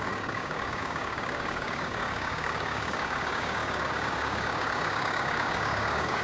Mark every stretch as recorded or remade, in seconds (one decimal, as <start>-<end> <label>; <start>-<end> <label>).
0.0-6.2 remade

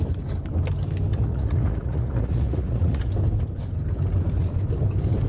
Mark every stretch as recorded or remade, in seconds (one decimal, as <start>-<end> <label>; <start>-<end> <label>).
0.0-1.1 recorded; 1.1-3.1 remade; 3.1-5.3 recorded

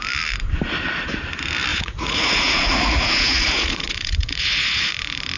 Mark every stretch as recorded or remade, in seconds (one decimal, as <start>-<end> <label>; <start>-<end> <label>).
0.0-1.7 recorded; 1.7-4.9 remade; 4.9-5.4 recorded

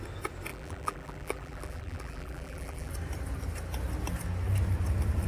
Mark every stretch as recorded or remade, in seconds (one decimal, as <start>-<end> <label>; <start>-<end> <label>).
0.0-0.5 recorded; 0.5-2.9 remade; 2.9-5.3 recorded

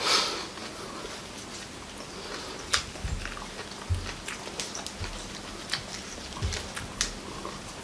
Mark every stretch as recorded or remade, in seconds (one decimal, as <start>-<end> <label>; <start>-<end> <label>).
0.0-7.8 recorded